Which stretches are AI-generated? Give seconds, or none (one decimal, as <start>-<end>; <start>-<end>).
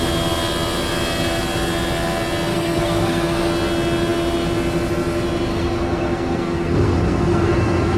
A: 2.5-3.5; 5.5-8.0